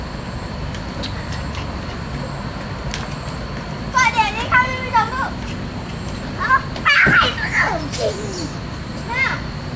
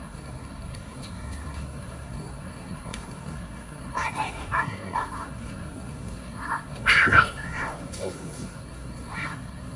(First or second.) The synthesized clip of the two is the second